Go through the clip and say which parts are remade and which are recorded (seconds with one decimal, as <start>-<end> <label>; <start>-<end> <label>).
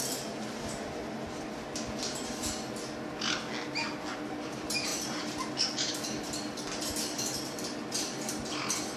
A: 0.0-4.9 recorded; 4.9-5.5 remade; 5.5-9.0 recorded